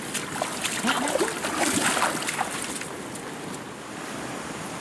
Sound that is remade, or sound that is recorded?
recorded